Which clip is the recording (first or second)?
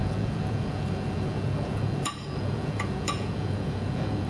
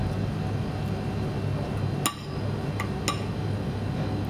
second